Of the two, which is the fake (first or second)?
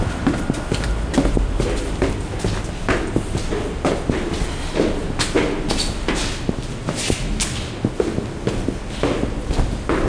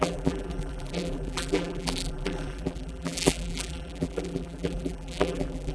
second